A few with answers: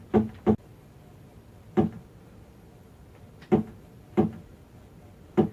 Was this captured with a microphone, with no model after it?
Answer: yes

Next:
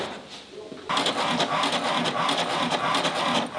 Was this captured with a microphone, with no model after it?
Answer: yes